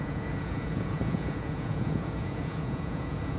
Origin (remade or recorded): remade